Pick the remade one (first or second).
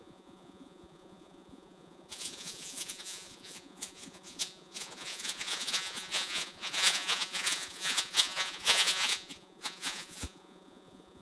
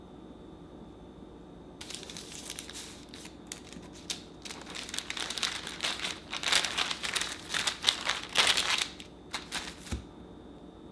first